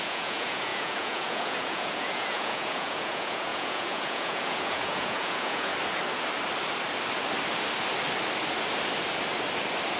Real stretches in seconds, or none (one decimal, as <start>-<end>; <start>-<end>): 5.7-10.0